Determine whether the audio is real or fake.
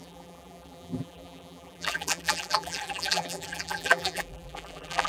fake